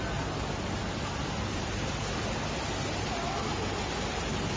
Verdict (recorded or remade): recorded